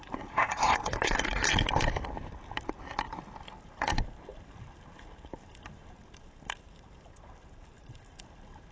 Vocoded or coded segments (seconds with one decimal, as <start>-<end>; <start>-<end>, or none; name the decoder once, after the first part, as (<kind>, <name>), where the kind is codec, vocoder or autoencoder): 0.0-1.4 (vocoder, BigVGAN v2); 3.6-8.7